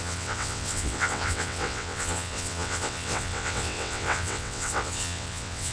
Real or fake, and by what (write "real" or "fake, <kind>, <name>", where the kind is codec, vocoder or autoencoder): fake, vocoder, WaveNeXt